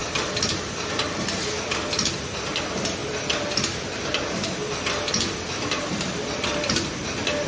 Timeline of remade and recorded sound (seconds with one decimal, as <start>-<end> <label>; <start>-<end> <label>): 0.0-7.5 recorded